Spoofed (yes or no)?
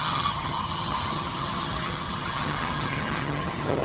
yes